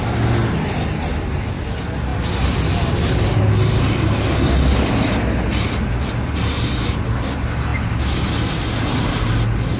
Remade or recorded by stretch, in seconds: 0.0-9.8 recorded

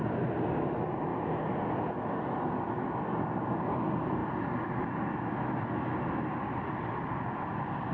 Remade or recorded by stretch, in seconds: 0.0-7.9 recorded